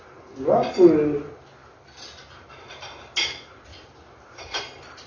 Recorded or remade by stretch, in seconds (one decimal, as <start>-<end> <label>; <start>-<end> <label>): 0.0-3.7 recorded; 3.7-4.6 remade; 4.6-5.1 recorded